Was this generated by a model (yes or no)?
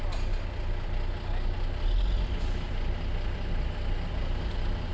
no